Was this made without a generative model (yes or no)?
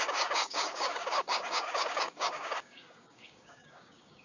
no